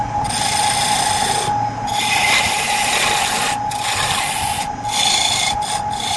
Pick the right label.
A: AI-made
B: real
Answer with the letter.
B